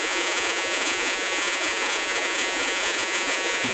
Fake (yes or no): yes